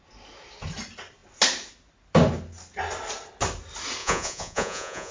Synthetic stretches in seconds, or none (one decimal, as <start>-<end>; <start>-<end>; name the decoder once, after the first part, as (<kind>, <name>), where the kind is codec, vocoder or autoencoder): 4.0-5.1 (vocoder, Vocos)